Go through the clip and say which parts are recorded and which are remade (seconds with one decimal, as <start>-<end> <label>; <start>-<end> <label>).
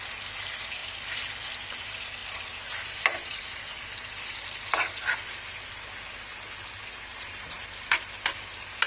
0.0-7.1 recorded; 7.1-8.0 remade; 8.0-8.9 recorded